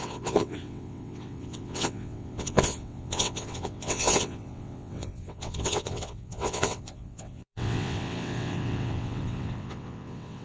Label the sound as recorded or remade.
remade